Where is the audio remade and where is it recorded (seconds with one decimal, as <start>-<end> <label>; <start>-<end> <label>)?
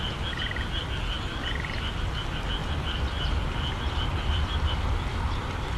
0.0-0.8 remade; 0.8-1.5 recorded; 1.5-2.6 remade; 2.6-3.2 recorded; 3.2-5.8 remade